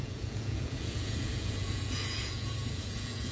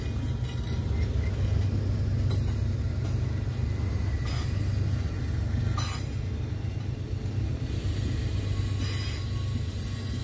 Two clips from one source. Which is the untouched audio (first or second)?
second